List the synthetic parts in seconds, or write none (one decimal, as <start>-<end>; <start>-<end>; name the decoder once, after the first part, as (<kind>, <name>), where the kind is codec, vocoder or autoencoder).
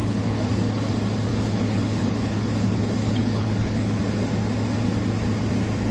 0.0-0.9 (codec, HILCodec); 1.3-4.0